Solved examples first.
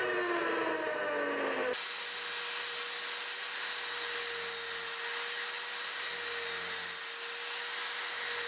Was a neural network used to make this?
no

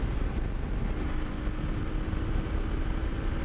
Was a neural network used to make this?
no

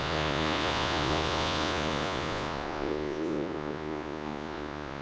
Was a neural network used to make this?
yes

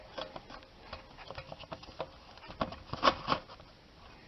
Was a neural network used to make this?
no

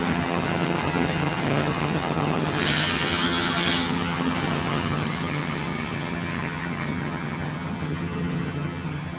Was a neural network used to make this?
yes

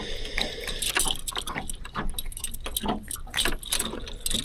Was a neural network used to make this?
no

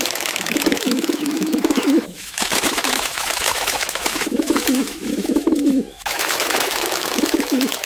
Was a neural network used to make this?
yes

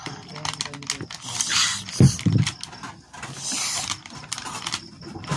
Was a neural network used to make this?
no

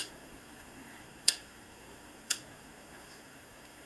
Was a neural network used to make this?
yes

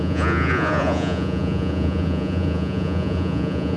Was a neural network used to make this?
yes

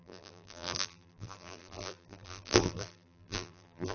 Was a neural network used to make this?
yes